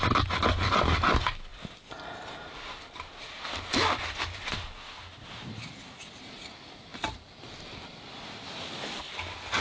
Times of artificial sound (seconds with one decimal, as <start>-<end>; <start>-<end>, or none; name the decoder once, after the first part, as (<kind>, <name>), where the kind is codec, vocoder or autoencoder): 1.5-4.7 (vocoder, BigVGAN v2); 6.9-7.8